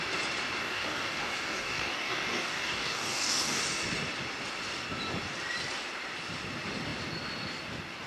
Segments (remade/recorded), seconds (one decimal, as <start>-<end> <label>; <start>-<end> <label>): 0.0-0.6 recorded; 0.6-3.6 remade; 3.6-8.1 recorded